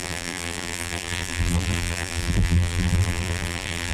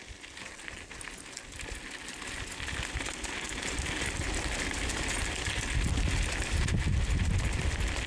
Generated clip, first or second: first